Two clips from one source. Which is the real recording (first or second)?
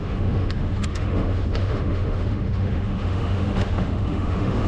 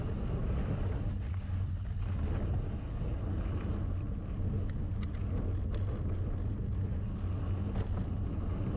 second